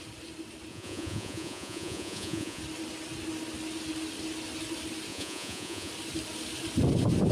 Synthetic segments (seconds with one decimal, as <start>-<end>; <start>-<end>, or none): 0.7-2.6; 5.1-5.9